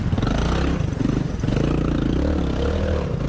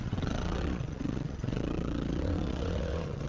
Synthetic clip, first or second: second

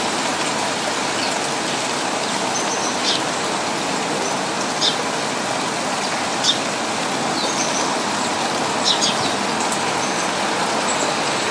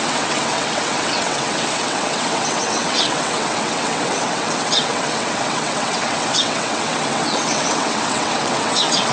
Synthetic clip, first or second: second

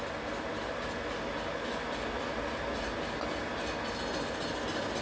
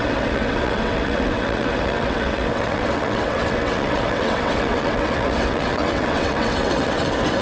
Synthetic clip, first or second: second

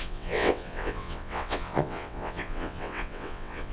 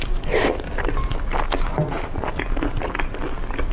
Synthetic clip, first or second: first